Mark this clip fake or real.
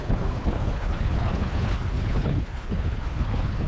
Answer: fake